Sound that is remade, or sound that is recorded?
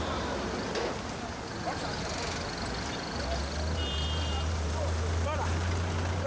recorded